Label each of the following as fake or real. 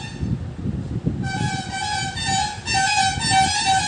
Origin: real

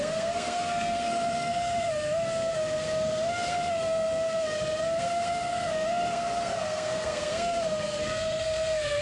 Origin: fake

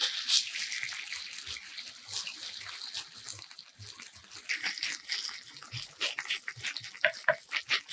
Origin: real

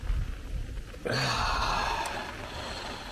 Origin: real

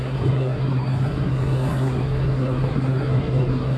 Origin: fake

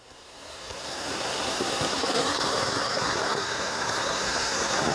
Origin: fake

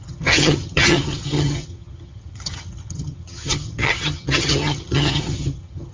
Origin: fake